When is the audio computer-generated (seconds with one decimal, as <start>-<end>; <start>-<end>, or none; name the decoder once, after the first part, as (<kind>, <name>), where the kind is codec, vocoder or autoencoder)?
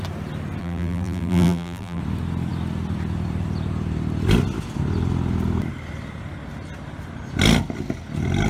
0.6-2.0 (vocoder, BigVGAN v2)